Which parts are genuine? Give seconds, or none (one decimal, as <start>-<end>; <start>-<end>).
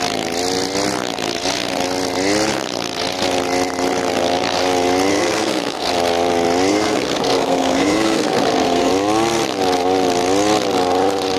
0.0-5.1; 5.9-6.7; 8.9-11.4